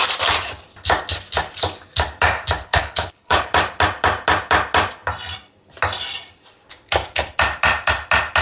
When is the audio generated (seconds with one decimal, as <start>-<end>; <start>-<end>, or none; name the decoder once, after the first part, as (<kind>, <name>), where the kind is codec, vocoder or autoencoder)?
2.6-3.5 (codec, HILCodec)